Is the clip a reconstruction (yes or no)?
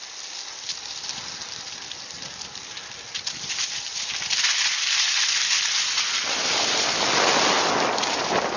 no